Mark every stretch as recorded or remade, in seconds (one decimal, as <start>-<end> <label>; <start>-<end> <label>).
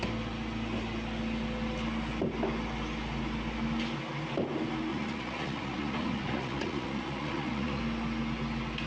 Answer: 0.0-4.9 recorded; 4.9-7.8 remade; 7.8-8.9 recorded